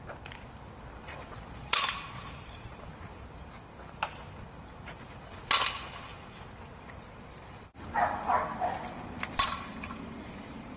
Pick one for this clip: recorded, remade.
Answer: remade